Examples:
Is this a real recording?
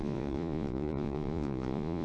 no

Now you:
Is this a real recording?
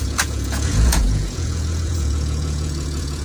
no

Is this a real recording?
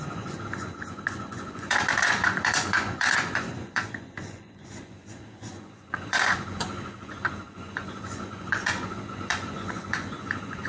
no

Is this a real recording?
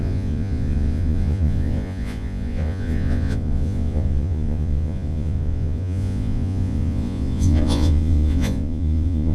no